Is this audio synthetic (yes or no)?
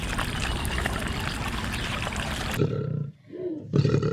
no